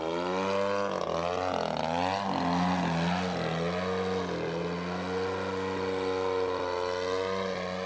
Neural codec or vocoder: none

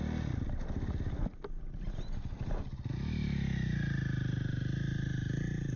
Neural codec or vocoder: none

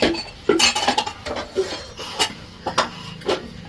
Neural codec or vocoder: none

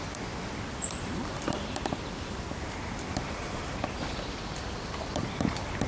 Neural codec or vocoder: vocoder, BigVGAN v2